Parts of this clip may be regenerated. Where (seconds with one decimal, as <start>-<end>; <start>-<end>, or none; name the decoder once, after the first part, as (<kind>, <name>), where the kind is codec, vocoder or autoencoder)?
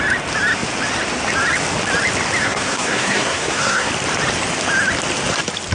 2.4-3.9 (codec, SNAC)